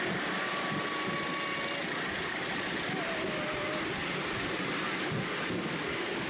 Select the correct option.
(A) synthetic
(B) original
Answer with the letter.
B